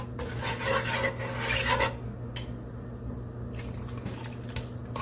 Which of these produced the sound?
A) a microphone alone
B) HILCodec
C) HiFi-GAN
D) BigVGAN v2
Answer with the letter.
A